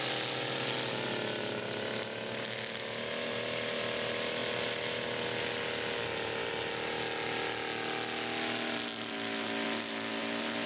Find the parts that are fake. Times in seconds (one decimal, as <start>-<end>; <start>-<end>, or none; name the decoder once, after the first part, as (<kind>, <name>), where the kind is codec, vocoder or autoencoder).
none